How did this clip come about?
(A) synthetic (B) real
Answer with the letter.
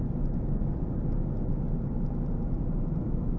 B